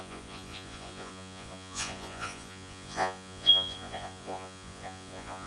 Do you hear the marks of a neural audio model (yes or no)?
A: yes